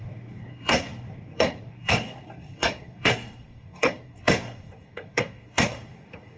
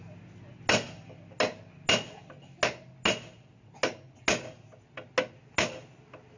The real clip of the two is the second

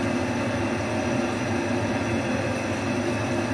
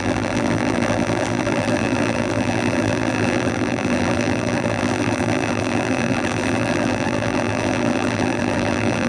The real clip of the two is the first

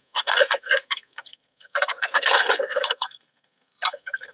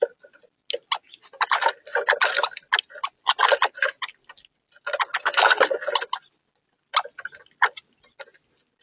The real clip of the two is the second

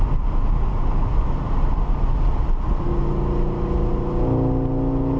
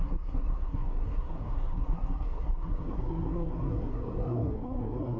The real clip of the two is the first